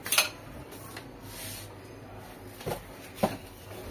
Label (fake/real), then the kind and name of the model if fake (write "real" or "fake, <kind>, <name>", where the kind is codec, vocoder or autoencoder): real